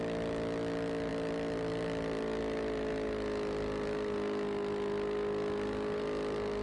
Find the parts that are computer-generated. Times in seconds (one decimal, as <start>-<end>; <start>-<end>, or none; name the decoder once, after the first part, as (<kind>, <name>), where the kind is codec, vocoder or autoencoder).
none